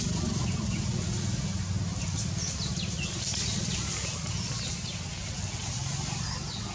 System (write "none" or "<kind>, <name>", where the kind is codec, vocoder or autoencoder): none